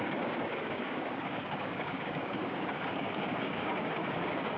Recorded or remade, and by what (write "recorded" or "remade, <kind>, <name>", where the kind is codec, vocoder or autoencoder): remade, codec, DAC